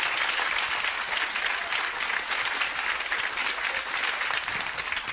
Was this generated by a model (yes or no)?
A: no